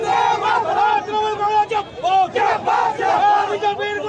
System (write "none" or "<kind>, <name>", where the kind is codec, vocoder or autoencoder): none